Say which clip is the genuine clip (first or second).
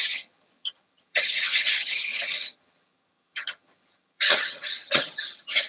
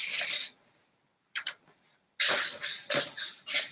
second